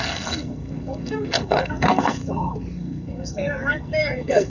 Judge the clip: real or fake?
fake